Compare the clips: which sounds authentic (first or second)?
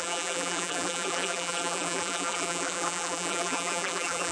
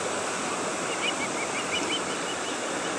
second